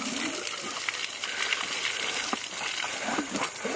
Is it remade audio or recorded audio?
recorded